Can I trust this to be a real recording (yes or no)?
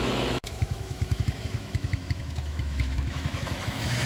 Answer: no